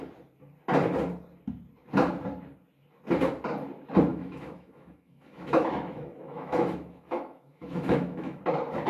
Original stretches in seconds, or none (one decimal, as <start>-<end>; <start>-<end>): 0.0-4.1; 8.4-8.9